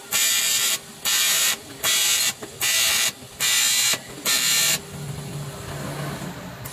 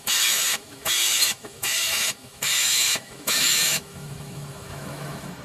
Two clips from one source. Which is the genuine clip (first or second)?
first